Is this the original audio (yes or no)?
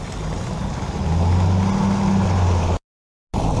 yes